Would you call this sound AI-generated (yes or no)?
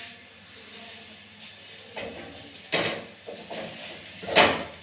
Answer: no